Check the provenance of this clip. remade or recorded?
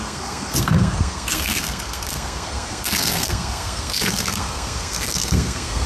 remade